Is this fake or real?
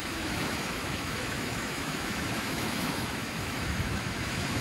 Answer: fake